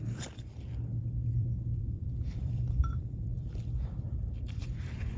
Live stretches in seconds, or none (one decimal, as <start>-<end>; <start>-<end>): none